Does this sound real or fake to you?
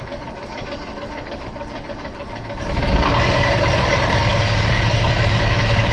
fake